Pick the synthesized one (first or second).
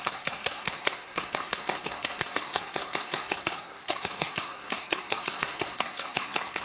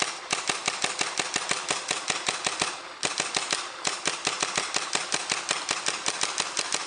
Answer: first